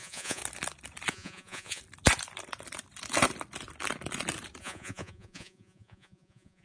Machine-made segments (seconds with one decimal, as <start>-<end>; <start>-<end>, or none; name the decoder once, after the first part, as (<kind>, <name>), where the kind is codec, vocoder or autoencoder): 0.0-0.4 (vocoder, Vocos); 1.1-1.8; 4.6-6.6